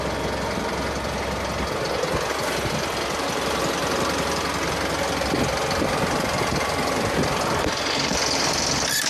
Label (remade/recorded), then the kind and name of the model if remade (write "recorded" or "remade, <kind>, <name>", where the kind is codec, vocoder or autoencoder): recorded